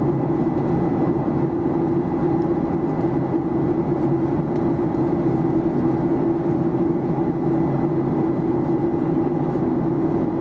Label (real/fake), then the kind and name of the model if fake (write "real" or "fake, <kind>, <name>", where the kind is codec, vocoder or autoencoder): real